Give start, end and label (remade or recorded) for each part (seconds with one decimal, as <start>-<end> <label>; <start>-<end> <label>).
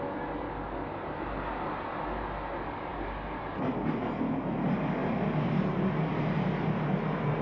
0.0-7.4 recorded